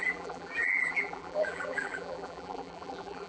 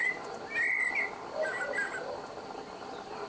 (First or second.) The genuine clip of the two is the second